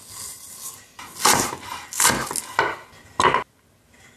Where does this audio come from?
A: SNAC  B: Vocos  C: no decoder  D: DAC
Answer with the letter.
C